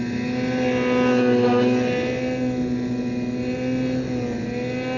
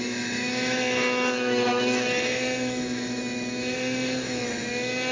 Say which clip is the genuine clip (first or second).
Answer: first